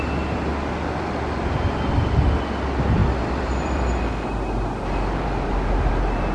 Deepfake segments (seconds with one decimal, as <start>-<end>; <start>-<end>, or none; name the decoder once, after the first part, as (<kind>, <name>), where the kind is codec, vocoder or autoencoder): 3.0-4.0 (vocoder, BigVGAN v2)